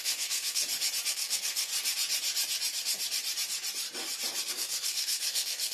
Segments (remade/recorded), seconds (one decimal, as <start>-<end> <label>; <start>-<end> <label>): 0.0-0.6 remade; 0.6-1.1 recorded; 1.1-1.7 remade; 1.7-4.5 recorded; 4.5-5.7 remade